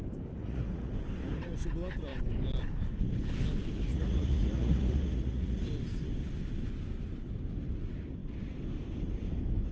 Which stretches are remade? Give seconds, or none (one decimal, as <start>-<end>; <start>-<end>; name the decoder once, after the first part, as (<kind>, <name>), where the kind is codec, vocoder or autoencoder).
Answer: 0.4-0.9 (vocoder, Vocos); 3.9-5.6

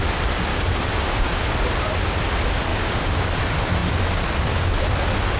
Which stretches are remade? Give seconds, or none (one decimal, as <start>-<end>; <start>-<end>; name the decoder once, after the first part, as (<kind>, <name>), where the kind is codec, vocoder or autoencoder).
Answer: 0.5-1.2 (codec, DAC); 2.7-3.3